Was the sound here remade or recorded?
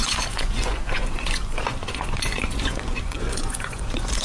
remade